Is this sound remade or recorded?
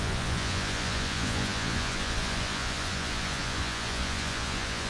remade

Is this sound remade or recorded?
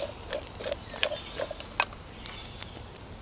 recorded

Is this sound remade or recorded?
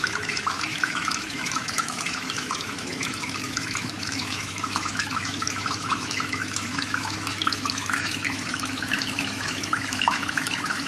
remade